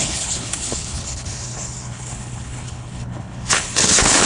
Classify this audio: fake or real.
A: fake